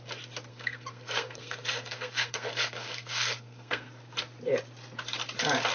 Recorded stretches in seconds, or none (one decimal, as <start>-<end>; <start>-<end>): 0.0-0.5; 3.9-5.7

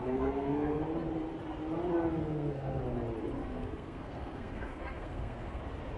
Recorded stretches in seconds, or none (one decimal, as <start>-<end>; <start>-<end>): 0.8-2.2; 2.8-3.4; 5.6-6.0